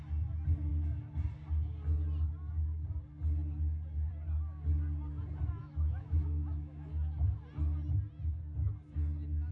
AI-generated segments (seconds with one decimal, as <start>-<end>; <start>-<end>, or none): 5.6-6.9